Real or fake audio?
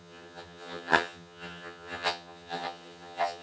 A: fake